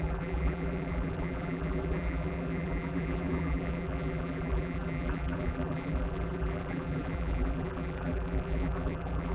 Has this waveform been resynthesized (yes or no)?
yes